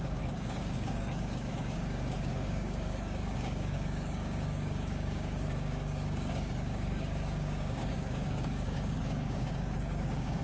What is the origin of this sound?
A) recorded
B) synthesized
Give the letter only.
B